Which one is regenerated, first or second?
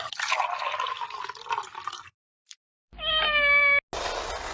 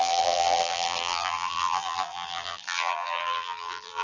second